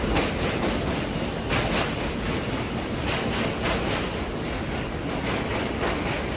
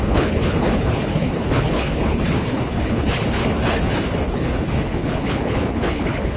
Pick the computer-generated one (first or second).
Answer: second